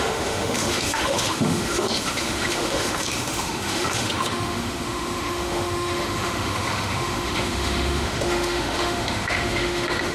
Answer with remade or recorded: remade